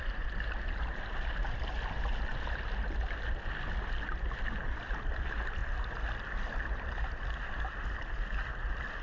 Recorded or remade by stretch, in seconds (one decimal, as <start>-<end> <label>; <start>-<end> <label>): 0.0-9.0 recorded